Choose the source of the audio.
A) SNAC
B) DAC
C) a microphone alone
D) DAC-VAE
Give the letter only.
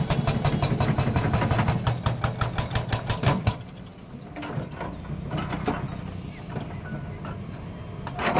C